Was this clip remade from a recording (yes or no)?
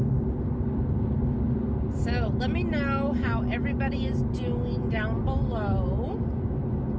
no